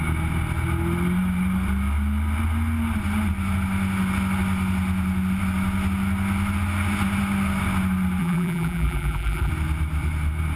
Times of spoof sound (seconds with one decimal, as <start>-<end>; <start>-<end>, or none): 8.2-9.5